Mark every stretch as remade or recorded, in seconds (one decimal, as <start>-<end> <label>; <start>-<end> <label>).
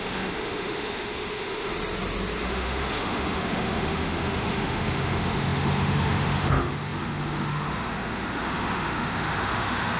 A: 0.0-1.7 remade; 1.7-2.4 recorded; 2.4-10.0 remade